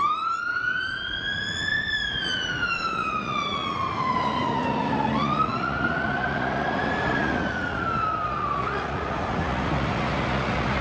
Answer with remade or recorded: remade